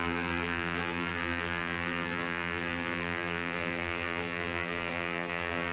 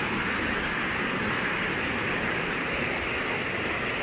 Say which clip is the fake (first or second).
first